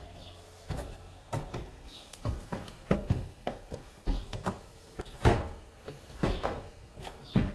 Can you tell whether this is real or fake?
fake